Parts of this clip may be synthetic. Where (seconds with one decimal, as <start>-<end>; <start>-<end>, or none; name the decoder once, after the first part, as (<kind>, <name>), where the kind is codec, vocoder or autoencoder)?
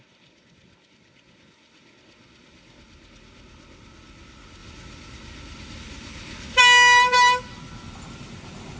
none